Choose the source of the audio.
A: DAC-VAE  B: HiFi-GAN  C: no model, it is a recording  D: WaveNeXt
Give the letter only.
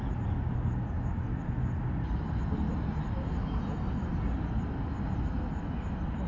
C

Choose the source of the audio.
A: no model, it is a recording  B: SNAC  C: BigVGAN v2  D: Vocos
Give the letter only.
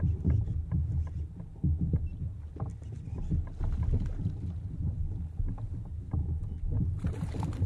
A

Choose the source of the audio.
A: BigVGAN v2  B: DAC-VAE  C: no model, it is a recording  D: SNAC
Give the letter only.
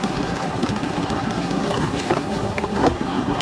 D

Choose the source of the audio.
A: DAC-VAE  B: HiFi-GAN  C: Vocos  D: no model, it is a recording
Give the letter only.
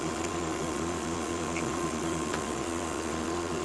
C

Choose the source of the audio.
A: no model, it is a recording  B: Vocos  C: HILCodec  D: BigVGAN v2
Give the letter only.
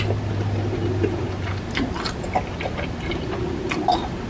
A